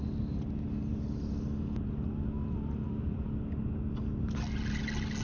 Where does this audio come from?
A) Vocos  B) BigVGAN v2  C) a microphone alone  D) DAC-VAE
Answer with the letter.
C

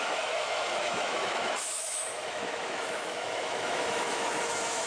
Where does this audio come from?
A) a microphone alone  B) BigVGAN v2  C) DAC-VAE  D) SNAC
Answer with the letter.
C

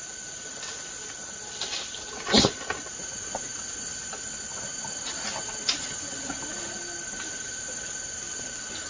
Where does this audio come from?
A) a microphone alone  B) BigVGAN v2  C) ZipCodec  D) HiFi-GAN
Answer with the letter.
A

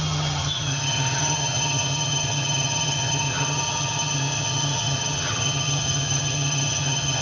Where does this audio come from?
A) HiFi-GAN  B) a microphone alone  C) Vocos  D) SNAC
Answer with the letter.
A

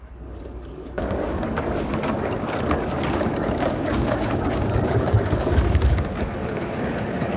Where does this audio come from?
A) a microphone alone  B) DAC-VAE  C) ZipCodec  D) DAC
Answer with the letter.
D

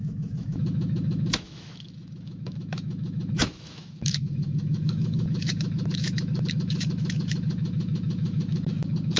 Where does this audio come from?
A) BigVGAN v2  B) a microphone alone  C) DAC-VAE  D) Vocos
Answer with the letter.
C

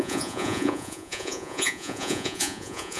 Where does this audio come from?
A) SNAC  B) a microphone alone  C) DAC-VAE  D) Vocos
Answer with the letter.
D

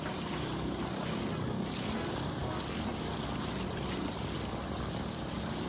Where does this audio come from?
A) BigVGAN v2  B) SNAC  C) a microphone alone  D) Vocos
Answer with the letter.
C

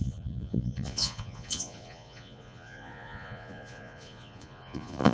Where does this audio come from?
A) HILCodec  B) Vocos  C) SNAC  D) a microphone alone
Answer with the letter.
B